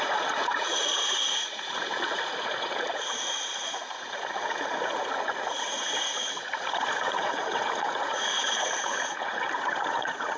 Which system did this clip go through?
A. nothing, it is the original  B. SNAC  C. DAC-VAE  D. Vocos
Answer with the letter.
D